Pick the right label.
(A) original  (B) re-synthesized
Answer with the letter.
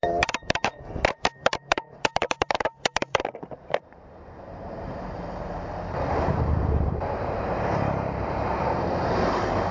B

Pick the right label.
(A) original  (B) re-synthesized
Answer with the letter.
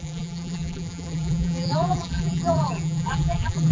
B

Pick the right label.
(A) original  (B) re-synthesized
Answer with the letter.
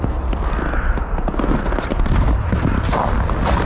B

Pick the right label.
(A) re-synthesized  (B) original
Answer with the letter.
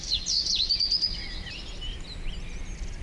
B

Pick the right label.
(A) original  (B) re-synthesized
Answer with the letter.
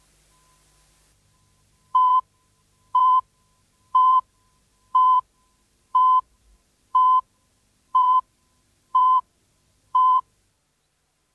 B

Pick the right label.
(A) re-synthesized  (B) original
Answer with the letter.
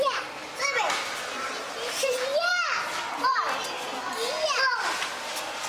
A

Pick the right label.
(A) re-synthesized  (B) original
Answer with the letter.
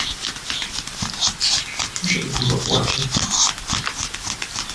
B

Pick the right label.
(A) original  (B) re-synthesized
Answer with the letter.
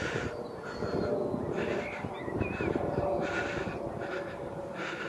A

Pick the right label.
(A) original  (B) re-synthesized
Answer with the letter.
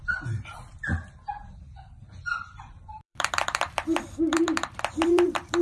B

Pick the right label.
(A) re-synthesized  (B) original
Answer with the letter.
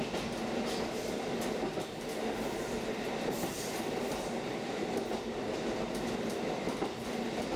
A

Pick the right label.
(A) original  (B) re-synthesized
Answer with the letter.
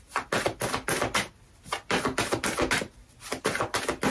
A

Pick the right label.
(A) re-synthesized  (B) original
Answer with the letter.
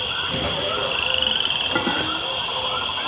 A